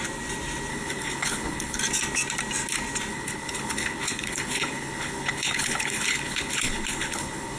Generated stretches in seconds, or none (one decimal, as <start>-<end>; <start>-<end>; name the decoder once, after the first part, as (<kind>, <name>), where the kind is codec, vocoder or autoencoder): 0.7-1.8 (codec, HILCodec); 3.1-7.6